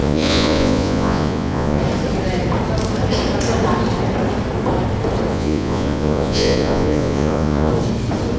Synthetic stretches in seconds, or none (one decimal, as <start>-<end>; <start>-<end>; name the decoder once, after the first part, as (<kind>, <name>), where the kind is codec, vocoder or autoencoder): 0.0-1.8 (vocoder, Vocos); 5.3-7.7